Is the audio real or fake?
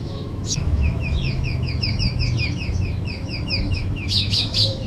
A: fake